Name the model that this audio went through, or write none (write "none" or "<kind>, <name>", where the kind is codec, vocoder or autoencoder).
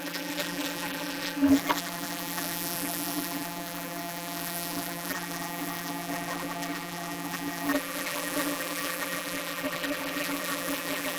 vocoder, BigVGAN v2